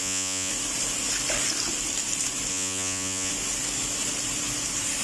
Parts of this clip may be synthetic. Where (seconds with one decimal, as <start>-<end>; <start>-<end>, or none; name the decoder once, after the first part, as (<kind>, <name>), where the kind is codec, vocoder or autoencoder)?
0.0-0.5 (vocoder, Vocos); 2.5-3.3